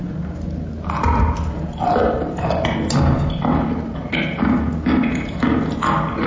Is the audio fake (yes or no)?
no